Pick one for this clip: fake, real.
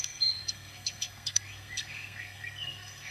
fake